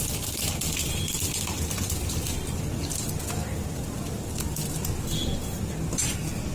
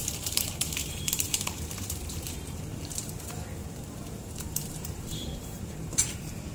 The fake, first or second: second